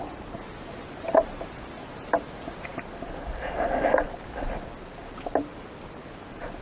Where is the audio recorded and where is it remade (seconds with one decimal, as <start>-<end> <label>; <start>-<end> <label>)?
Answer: 0.0-6.6 recorded